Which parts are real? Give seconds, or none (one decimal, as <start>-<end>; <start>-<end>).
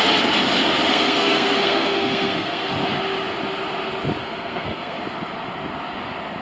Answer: 0.0-0.9; 2.7-4.2; 5.0-6.4